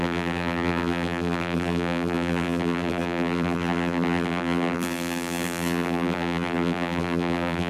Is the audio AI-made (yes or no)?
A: yes